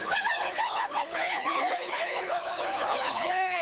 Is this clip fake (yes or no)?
yes